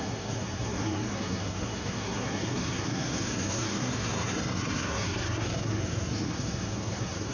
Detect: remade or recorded remade